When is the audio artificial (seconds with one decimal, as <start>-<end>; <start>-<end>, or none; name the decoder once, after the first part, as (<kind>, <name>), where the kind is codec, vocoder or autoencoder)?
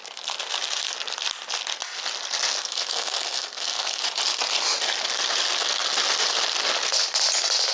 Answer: 2.5-4.0 (codec, SNAC)